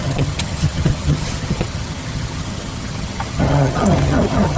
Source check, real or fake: fake